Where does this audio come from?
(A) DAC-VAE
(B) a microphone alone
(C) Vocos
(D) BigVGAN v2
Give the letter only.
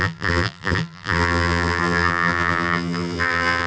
D